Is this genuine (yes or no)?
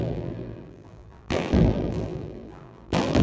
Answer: no